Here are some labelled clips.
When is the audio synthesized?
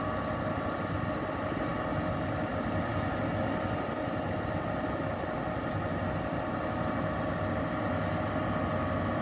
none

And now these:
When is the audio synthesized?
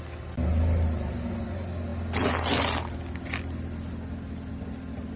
none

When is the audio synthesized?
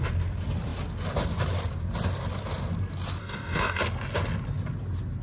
3.2-3.8 (codec, DAC)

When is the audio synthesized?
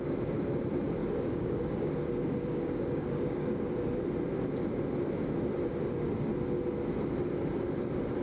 1.0-3.7 (codec, DAC)